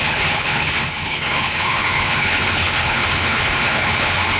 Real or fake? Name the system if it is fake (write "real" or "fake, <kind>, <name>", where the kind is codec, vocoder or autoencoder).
fake, codec, HILCodec